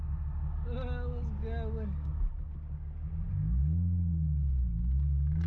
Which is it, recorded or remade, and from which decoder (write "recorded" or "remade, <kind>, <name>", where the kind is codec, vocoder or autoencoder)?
recorded